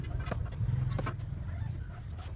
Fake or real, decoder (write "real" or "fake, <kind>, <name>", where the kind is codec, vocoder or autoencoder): real